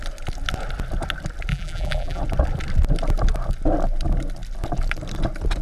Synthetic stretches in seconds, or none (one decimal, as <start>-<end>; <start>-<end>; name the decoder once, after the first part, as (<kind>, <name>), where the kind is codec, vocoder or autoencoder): 1.5-2.2 (vocoder, BigVGAN v2)

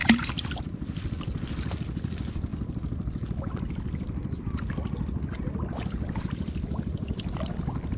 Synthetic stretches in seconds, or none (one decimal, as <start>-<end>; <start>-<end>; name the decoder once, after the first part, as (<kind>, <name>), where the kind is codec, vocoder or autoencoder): 0.6-8.0 (vocoder, BigVGAN v2)

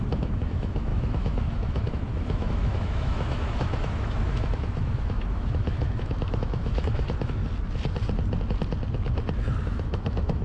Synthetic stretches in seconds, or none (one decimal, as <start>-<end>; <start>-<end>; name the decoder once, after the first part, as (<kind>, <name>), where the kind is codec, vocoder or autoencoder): 0.0-7.4 (autoencoder, DAC-VAE); 9.6-10.4

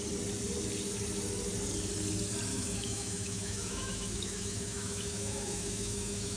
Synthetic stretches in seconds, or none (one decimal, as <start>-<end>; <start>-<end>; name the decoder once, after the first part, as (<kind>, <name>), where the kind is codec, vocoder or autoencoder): 2.5-6.4 (autoencoder, DAC-VAE)

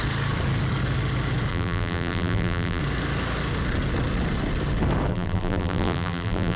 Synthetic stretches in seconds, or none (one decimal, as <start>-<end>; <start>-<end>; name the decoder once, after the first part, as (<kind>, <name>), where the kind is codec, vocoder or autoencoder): 1.5-2.8 (vocoder, BigVGAN v2); 5.1-6.6

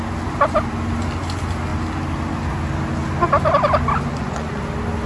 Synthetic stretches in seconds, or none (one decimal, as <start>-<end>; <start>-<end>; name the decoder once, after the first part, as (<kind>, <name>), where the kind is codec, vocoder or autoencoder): 4.1-4.6 (vocoder, Vocos)

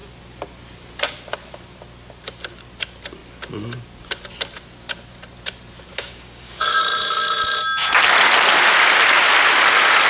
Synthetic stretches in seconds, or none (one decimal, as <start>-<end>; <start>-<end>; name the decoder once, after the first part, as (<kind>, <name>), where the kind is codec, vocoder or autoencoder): 5.9-6.8 (codec, DAC)

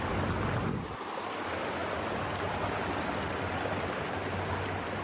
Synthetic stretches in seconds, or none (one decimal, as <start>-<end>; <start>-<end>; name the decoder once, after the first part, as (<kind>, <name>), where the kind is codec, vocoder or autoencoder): none